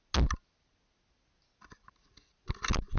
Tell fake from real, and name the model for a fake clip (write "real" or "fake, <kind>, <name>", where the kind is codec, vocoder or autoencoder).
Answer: real